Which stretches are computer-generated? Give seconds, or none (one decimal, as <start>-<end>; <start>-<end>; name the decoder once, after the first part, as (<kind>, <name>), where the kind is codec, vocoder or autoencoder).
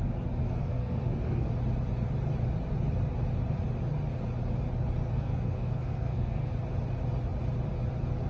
0.4-1.5 (codec, SNAC); 5.1-6.5